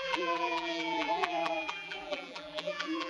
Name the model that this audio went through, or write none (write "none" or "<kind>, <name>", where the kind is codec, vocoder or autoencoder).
vocoder, BigVGAN v2